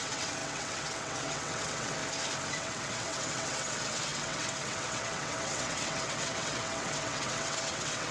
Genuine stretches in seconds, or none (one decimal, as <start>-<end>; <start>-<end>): 2.0-2.5